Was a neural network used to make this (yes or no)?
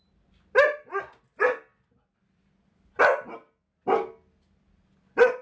no